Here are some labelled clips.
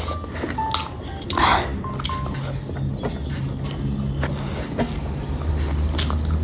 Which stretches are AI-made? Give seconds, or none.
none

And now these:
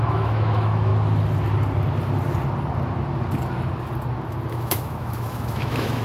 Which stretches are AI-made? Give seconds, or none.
0.0-0.9 (autoencoder, DAC-VAE); 4.5-6.0

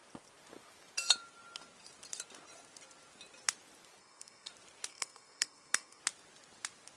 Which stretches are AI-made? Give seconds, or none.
4.0-4.5 (codec, SNAC); 4.9-6.0

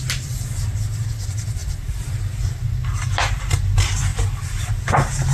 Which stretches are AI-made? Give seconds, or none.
none

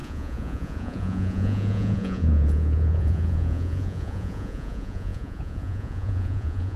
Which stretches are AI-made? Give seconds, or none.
0.0-6.8 (vocoder, Vocos)

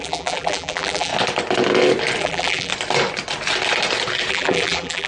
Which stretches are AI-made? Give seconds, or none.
0.0-1.1 (vocoder, BigVGAN v2); 2.2-2.7; 4.3-5.1

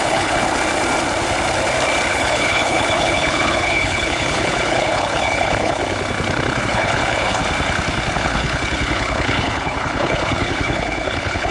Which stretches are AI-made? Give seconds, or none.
0.0-0.4 (codec, HILCodec); 2.1-5.8; 6.6-7.4; 8.1-11.5